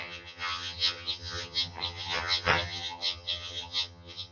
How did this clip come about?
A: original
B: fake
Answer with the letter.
B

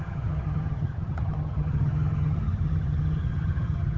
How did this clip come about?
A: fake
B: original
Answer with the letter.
A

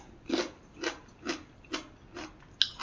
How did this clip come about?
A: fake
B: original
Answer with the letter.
B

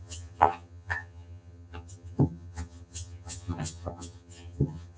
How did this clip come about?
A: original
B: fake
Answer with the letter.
B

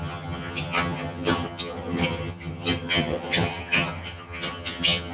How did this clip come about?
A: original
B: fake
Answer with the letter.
B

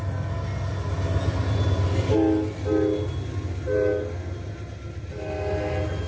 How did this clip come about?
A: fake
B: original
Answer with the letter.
B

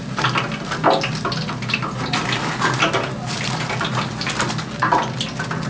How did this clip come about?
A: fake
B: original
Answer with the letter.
B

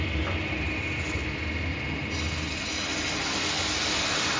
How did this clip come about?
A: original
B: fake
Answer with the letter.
A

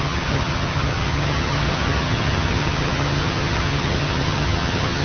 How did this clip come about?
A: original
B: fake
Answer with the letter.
B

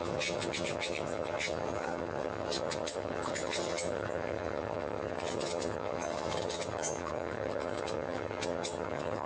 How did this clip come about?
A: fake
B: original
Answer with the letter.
A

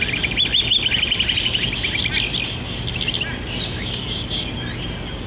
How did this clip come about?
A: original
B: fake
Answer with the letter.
A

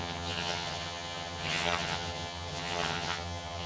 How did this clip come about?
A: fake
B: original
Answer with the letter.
A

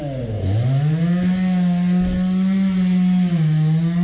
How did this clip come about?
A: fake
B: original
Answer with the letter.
B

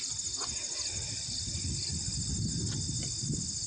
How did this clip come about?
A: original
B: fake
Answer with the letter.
A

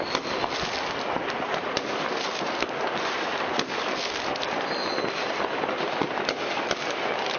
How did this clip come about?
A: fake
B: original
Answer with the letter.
B